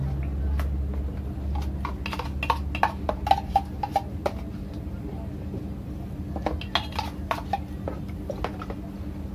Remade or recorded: recorded